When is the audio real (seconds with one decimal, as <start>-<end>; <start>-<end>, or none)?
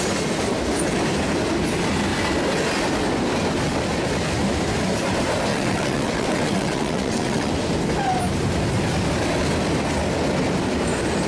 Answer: 0.0-5.5; 7.5-11.3